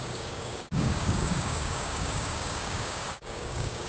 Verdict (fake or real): fake